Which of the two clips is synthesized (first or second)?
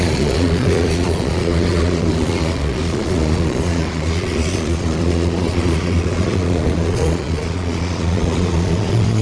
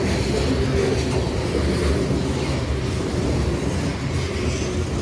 first